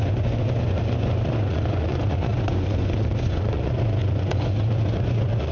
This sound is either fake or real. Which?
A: fake